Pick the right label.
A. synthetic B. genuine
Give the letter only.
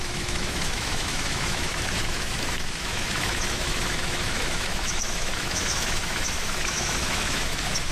A